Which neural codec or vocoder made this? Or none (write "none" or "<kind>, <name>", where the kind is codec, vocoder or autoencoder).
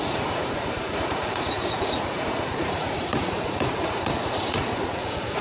vocoder, Vocos